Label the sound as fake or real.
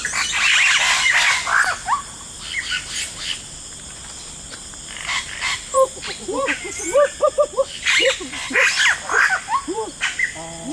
real